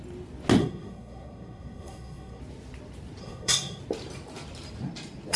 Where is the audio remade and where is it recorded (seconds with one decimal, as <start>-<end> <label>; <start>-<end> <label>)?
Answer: 0.0-0.6 recorded; 0.6-2.4 remade; 2.4-3.2 recorded; 3.2-3.8 remade; 3.8-5.4 recorded